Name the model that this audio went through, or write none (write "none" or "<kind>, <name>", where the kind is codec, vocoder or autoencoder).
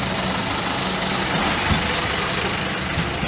none